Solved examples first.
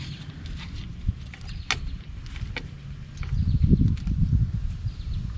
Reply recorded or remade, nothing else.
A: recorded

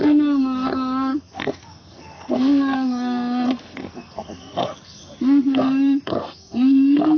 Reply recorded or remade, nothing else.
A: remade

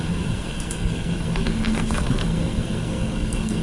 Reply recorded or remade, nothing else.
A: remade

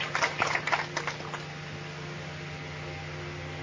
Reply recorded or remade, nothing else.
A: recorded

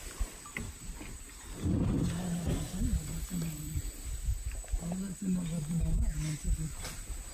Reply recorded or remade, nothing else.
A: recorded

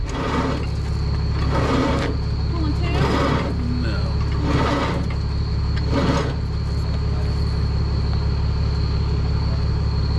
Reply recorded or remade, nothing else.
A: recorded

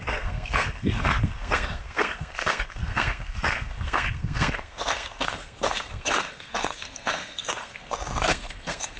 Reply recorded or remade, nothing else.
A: remade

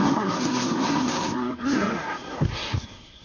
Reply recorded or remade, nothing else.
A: remade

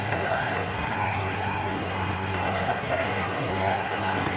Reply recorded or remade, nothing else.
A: remade